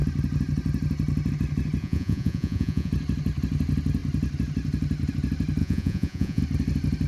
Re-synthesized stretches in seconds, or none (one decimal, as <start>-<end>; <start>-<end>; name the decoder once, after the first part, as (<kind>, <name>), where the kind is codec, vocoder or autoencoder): 1.8-2.9 (vocoder, Vocos); 5.6-6.4

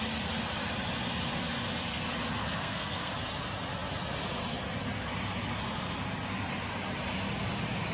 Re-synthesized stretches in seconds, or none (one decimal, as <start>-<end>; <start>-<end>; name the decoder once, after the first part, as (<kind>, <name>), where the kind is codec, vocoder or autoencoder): 2.4-3.1 (codec, SNAC)

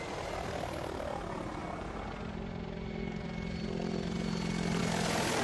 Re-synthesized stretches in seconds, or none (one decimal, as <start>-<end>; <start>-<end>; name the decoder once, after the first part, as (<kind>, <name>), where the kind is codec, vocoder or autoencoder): none

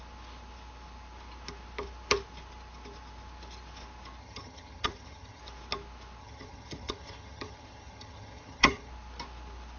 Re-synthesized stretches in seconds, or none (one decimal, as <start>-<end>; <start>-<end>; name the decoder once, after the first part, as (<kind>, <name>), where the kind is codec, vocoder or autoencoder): 4.2-5.4 (vocoder, HiFi-GAN); 6.2-8.9

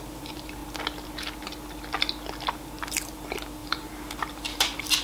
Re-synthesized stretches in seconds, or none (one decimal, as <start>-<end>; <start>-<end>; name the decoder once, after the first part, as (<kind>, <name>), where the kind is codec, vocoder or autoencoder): 0.0-0.6 (vocoder, BigVGAN v2); 2.5-5.0

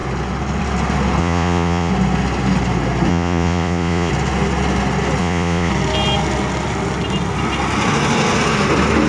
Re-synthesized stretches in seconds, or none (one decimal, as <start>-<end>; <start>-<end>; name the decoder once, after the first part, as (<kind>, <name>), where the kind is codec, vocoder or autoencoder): 1.2-1.9 (vocoder, Vocos); 3.1-4.1; 5.2-5.7

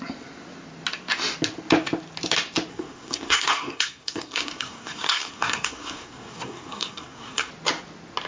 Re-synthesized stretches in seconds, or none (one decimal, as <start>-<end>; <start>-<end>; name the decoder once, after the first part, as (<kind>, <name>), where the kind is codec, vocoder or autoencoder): 2.7-7.5 (codec, SNAC)